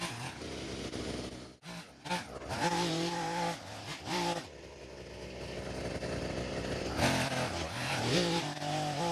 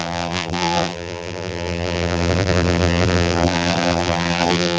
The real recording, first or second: first